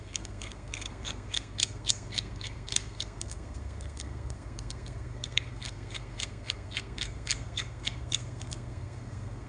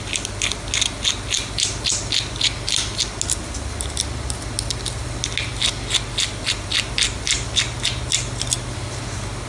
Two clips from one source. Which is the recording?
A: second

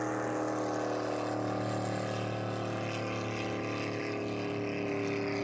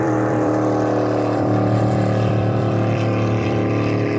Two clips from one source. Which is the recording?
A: first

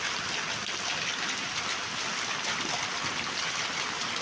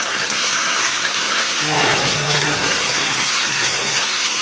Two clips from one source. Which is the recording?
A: first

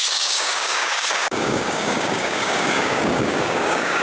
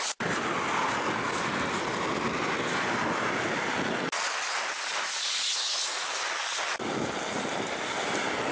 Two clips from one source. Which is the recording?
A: second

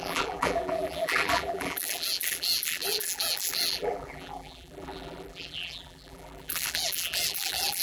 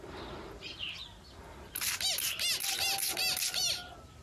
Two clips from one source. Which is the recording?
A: second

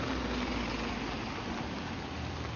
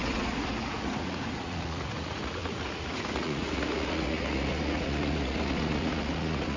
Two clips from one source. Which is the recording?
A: first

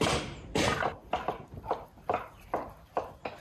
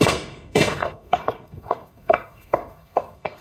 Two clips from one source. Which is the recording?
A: first